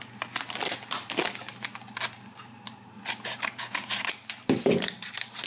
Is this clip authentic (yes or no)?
yes